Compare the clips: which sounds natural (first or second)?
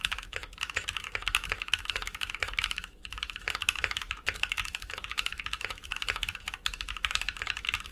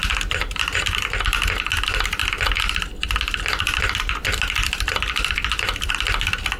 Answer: second